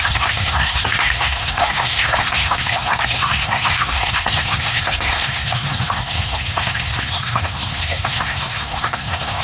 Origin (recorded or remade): remade